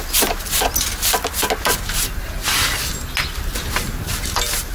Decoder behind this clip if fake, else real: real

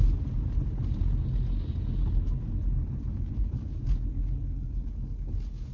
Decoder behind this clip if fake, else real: real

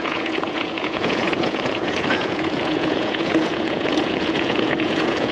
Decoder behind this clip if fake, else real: fake, vocoder, Vocos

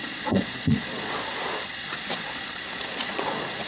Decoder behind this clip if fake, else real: fake, vocoder, Vocos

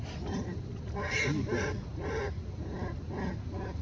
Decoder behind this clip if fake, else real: real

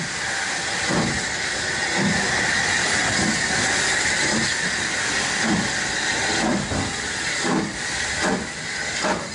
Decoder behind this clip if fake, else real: real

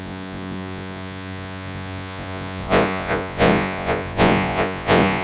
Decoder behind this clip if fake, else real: fake, vocoder, Vocos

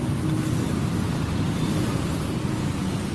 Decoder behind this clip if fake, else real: real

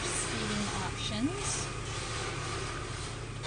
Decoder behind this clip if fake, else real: real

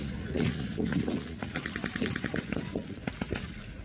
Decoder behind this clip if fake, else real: fake, vocoder, Vocos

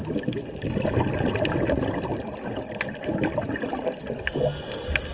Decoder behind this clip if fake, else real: real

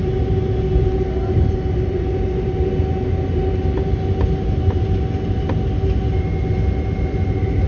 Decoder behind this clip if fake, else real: real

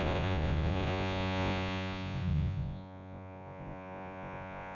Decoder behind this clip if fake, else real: fake, vocoder, Vocos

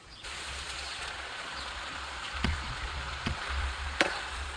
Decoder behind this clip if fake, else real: fake, vocoder, Vocos